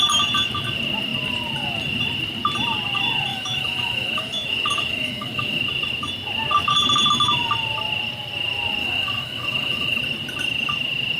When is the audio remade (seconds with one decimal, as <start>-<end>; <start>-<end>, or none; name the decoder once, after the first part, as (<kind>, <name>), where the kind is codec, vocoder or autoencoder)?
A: 3.3-5.6 (autoencoder, DAC-VAE); 8.8-10.0